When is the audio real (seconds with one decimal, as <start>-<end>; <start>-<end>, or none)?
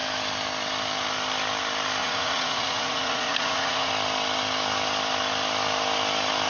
0.0-2.0; 3.9-6.5